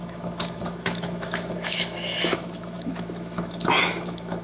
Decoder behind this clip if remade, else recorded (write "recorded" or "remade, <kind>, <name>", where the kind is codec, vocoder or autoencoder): remade, autoencoder, DAC-VAE